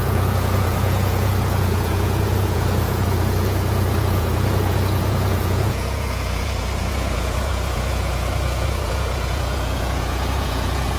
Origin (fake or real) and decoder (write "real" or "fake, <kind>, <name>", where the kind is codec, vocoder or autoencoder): fake, vocoder, Vocos